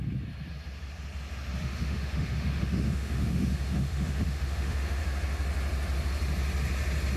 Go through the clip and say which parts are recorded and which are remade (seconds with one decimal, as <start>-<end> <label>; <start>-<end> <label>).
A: 0.0-1.6 recorded; 1.6-5.0 remade; 5.0-7.2 recorded